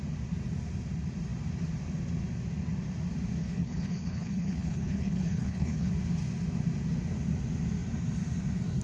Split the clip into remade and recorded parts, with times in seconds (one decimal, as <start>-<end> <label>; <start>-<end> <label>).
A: 0.0-3.4 recorded; 3.4-5.9 remade; 5.9-8.8 recorded